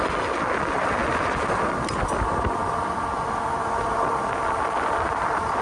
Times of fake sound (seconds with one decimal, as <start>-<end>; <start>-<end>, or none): none